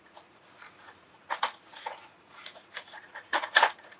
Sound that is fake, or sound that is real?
fake